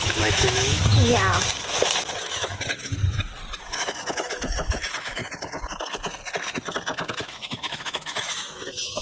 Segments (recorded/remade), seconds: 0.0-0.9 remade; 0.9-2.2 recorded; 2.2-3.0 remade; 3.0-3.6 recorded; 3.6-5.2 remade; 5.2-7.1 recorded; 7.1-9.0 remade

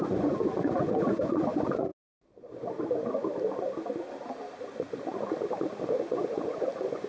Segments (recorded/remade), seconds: 0.0-1.9 remade; 1.9-6.0 recorded; 6.0-7.1 remade

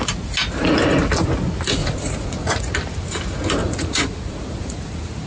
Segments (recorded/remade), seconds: 0.0-1.8 recorded; 1.8-2.6 remade; 2.6-3.6 recorded; 3.6-5.3 remade

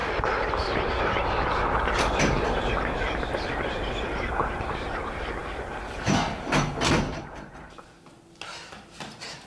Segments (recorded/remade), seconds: 0.0-1.0 remade; 1.0-9.5 recorded